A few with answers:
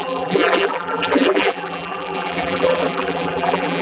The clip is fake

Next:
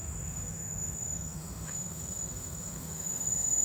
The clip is fake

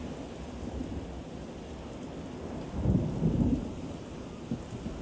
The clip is real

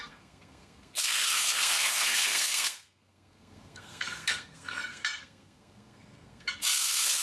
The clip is fake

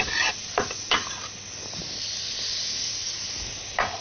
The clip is real